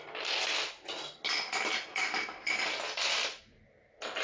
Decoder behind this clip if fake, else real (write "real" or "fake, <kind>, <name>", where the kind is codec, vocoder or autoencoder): real